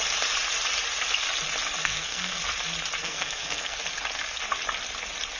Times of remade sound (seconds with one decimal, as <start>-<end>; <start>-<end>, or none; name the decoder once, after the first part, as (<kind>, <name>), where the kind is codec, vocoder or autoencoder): 1.8-2.4 (codec, SNAC); 3.0-3.8

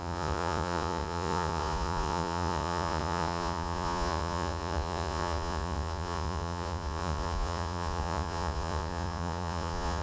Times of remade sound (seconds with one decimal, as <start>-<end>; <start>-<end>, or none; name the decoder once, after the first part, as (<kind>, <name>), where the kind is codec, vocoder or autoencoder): 0.0-10.0 (vocoder, Vocos)

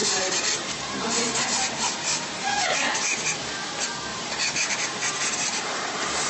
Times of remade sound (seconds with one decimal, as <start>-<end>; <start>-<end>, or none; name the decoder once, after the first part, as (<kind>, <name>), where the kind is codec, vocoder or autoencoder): 0.0-2.9 (vocoder, BigVGAN v2); 4.1-6.3

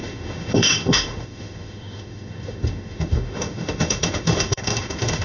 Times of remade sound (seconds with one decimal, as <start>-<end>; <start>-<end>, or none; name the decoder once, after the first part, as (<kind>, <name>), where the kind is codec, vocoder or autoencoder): 0.0-5.2 (autoencoder, DAC-VAE)

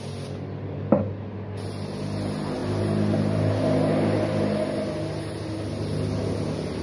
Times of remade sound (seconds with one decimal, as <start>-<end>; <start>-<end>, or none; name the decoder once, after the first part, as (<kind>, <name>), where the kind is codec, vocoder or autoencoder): none

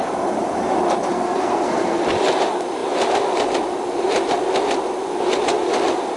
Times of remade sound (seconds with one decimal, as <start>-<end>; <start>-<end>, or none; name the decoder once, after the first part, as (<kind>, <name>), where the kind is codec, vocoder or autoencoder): 1.1-2.0 (codec, SNAC)

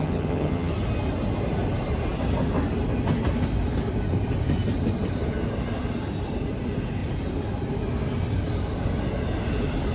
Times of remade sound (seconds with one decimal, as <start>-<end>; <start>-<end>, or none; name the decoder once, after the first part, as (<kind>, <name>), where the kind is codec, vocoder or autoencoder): 0.0-0.7 (vocoder, HiFi-GAN)

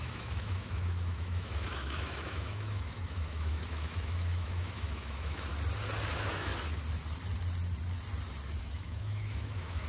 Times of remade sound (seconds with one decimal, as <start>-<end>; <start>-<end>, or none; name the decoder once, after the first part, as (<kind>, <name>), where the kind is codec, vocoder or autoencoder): 0.0-5.5 (autoencoder, DAC-VAE); 6.1-6.5; 8.6-9.9